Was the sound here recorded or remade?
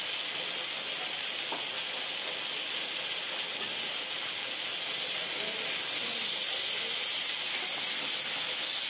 recorded